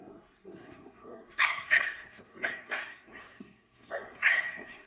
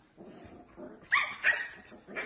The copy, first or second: first